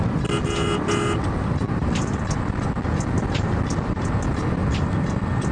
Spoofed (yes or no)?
no